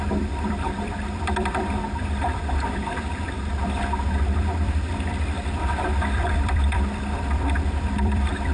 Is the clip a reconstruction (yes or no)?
yes